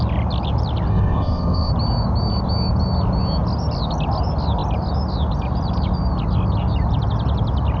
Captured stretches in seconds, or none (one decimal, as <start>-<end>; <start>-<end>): 0.0-0.9; 1.7-7.8